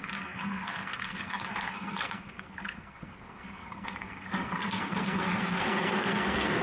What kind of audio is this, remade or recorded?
remade